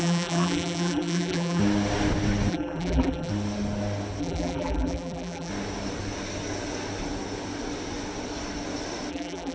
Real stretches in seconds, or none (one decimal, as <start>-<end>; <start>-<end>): 1.6-2.5; 3.3-4.2; 5.5-9.1